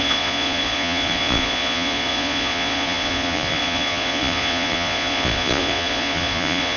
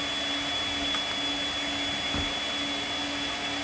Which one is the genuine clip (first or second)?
second